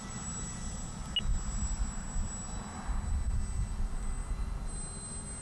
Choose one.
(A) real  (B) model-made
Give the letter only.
A